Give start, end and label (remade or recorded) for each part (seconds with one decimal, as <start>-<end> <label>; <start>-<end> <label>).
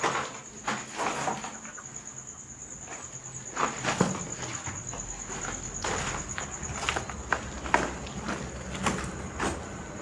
0.0-10.0 recorded